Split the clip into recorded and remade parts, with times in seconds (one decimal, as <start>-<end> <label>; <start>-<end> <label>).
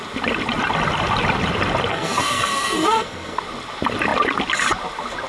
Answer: 0.0-1.9 recorded; 1.9-3.4 remade; 3.4-5.3 recorded